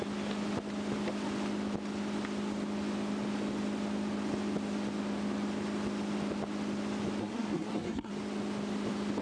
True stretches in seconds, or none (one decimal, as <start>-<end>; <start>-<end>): 0.0-7.2; 8.1-9.2

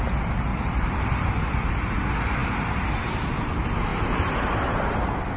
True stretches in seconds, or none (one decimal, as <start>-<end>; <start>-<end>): 0.0-0.5; 1.3-3.9; 5.0-5.4

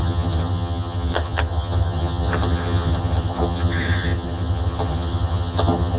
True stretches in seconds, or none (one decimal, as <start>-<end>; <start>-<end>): none

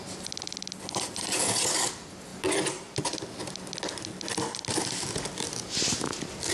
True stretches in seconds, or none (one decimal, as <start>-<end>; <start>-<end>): 0.0-6.5